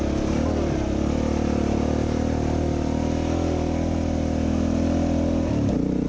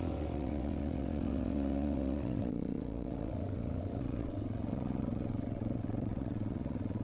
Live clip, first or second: first